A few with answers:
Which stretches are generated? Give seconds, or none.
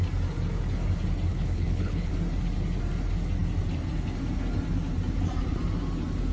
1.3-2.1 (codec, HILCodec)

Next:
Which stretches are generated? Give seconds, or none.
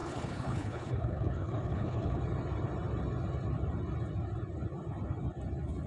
0.0-2.2 (codec, HILCodec)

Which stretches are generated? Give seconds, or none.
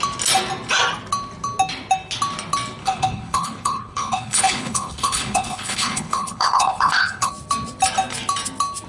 2.8-7.3 (codec, HILCodec)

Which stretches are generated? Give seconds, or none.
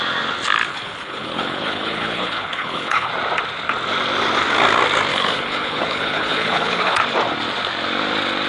0.7-3.1 (codec, HILCodec); 5.1-7.0